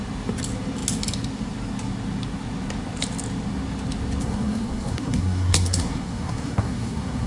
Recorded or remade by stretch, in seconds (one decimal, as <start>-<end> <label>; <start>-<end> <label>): 0.0-4.2 recorded; 4.2-7.3 remade